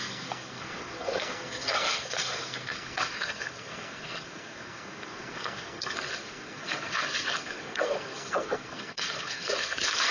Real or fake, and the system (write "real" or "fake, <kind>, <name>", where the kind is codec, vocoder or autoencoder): fake, codec, SNAC